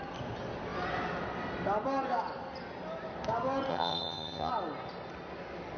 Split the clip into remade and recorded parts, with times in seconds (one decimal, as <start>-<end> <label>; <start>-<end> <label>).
0.0-3.7 recorded; 3.7-4.5 remade; 4.5-5.8 recorded